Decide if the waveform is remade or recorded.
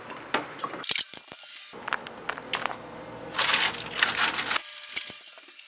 recorded